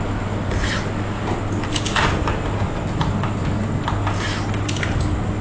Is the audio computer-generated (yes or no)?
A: no